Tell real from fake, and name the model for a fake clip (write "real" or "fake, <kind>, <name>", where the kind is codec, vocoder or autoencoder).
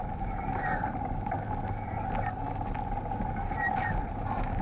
real